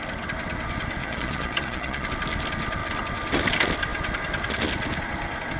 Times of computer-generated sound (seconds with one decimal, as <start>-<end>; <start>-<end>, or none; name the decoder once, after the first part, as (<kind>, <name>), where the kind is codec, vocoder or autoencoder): 1.0-2.1 (vocoder, Vocos)